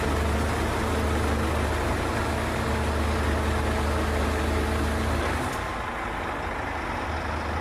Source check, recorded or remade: recorded